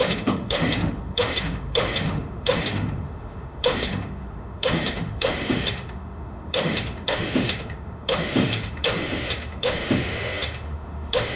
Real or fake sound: fake